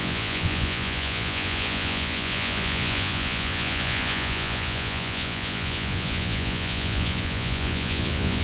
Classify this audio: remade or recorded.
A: remade